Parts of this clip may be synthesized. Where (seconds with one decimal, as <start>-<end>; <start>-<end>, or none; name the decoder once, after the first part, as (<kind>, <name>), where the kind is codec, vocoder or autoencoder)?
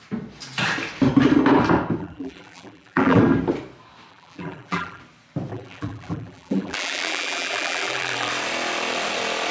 2.0-3.2 (vocoder, BigVGAN v2); 4.1-5.0; 5.5-8.3